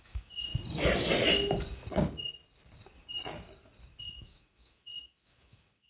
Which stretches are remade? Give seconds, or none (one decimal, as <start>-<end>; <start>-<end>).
0.0-0.5; 4.0-5.9